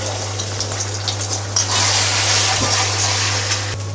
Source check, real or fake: real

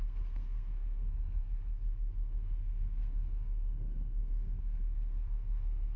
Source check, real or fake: fake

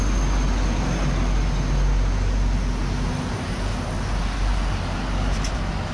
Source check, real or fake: real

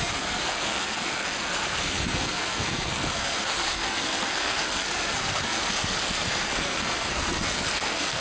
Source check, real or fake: fake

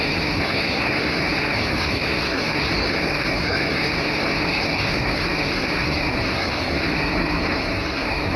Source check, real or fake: fake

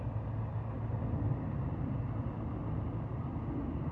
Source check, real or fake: real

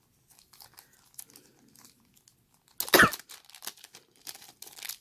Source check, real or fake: real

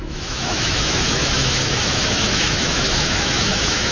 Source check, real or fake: fake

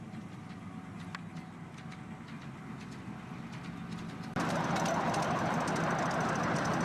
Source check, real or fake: real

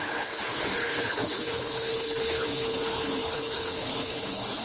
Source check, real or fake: fake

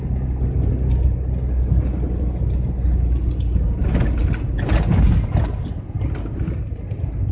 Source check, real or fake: real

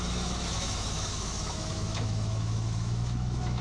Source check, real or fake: fake